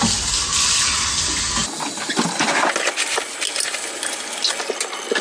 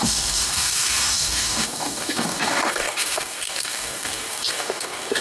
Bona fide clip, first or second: first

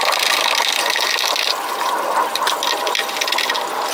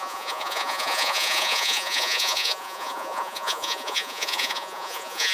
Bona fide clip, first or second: first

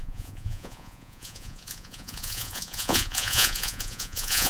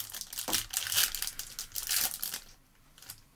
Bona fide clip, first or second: second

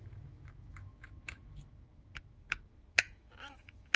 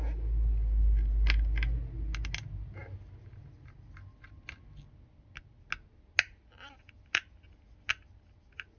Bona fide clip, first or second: second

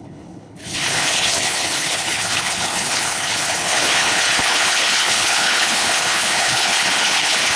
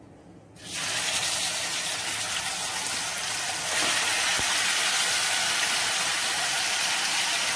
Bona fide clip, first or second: second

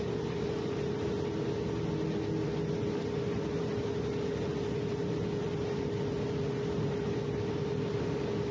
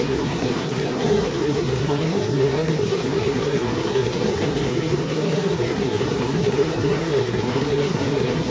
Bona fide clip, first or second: first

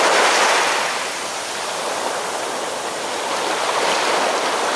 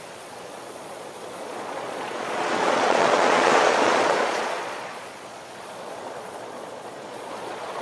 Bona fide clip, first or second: first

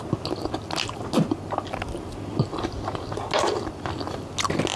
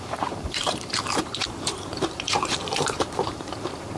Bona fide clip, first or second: first